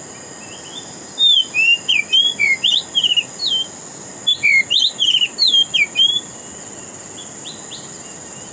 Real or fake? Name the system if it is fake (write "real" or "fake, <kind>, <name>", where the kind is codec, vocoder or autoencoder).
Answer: real